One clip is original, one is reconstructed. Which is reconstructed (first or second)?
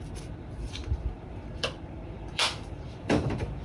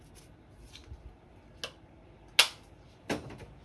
first